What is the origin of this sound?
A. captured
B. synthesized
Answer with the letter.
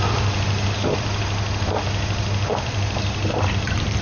A